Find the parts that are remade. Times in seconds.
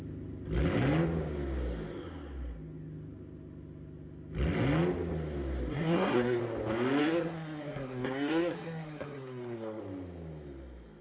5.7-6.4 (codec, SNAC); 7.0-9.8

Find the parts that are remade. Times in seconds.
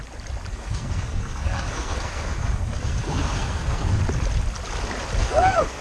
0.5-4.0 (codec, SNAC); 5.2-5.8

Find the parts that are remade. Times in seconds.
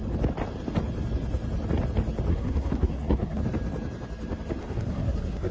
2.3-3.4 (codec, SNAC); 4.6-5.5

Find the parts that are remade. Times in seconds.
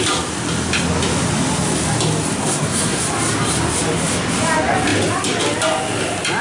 2.4-3.0 (codec, SNAC)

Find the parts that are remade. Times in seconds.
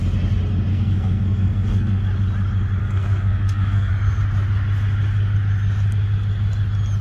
0.7-2.0 (codec, SNAC); 2.8-3.9